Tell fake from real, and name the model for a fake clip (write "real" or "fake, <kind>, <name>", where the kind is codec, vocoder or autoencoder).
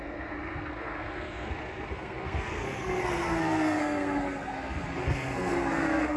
fake, codec, SNAC